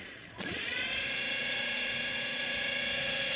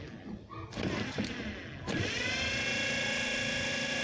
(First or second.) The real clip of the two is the second